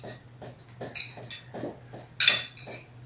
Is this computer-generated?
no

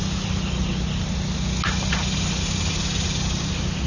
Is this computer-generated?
no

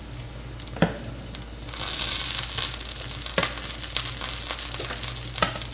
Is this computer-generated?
no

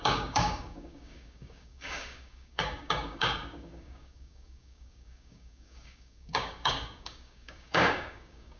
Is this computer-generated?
yes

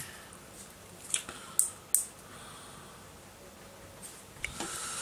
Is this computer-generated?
no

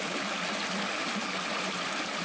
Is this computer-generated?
no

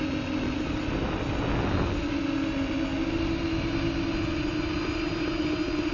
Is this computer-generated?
no